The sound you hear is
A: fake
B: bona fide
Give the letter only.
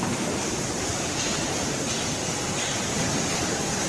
A